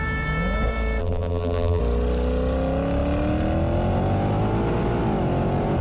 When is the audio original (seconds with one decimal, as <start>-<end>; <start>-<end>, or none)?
0.0-1.0; 1.8-5.8